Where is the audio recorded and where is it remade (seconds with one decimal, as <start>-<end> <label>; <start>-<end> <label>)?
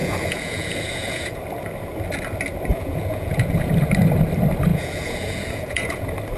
0.0-1.4 remade; 1.4-2.7 recorded; 2.7-3.7 remade; 3.7-4.7 recorded; 4.7-6.0 remade; 6.0-6.4 recorded